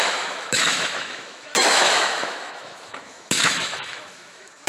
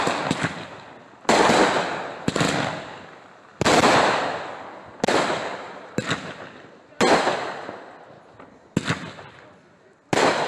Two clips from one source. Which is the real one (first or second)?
second